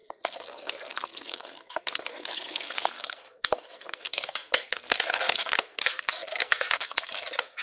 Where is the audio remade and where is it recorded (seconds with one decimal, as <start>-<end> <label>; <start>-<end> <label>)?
0.0-7.6 remade

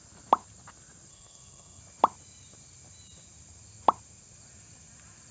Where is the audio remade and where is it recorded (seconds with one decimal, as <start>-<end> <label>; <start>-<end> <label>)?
0.0-1.1 recorded; 1.1-1.8 remade; 1.8-5.3 recorded